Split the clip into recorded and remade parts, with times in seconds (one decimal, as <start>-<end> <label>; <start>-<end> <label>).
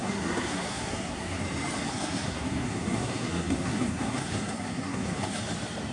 0.0-1.4 remade; 1.4-1.9 recorded; 1.9-5.4 remade; 5.4-5.9 recorded